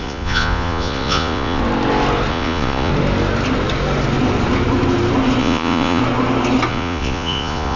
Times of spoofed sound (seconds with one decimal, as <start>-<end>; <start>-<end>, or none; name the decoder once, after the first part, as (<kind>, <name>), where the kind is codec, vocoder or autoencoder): 0.0-1.6 (vocoder, Vocos); 2.3-2.9; 5.4-6.0; 6.7-7.8